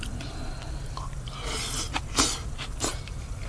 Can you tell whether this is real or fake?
real